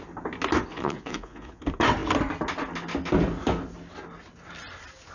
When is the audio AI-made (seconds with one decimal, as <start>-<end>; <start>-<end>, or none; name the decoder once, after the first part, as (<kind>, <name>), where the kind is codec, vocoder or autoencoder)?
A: 0.7-1.6 (vocoder, Vocos)